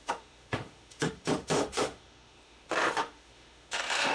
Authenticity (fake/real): fake